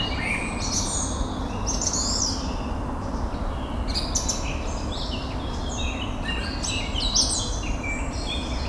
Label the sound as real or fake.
real